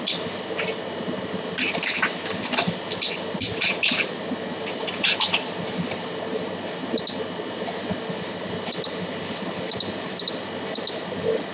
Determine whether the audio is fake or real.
real